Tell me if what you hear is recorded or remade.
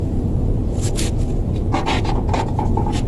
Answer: recorded